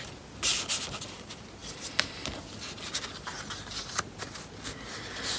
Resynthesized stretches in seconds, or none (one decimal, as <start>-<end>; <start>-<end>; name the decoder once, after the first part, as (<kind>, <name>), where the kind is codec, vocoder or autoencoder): none